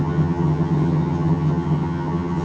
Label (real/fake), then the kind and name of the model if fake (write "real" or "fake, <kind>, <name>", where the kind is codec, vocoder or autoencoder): fake, vocoder, HiFi-GAN